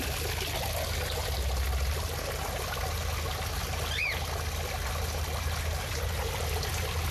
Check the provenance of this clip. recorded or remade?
recorded